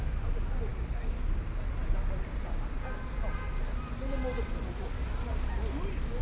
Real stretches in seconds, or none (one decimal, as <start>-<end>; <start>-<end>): 0.0-6.2